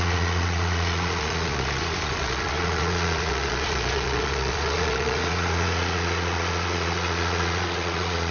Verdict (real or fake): fake